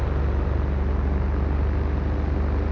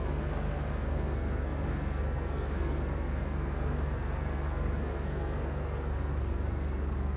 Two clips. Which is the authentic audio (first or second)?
first